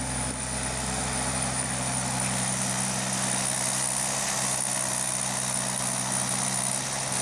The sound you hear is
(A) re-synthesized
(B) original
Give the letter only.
B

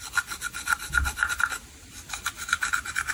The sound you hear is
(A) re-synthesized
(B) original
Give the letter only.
B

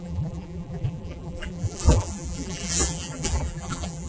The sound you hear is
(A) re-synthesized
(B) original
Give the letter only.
A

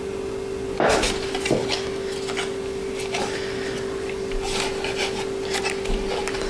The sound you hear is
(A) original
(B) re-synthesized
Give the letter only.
A